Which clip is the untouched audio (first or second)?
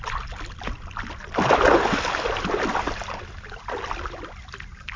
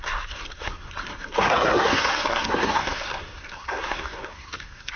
first